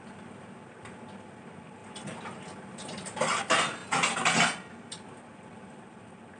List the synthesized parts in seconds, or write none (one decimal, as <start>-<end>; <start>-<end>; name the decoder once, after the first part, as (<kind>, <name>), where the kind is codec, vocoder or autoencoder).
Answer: none

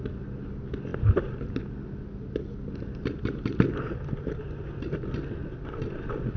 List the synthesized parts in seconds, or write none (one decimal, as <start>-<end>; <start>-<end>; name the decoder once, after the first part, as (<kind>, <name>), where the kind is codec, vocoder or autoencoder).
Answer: none

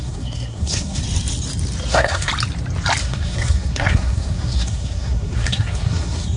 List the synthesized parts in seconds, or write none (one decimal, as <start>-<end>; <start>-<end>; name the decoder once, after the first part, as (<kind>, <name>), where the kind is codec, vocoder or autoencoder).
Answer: 0.0-1.0 (codec, SNAC); 1.9-2.3; 3.0-6.4

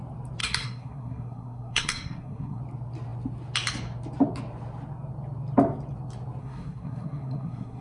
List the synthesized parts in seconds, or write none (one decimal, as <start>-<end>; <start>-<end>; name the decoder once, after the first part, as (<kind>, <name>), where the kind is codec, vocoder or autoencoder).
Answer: 0.4-2.6 (codec, SNAC); 6.4-7.8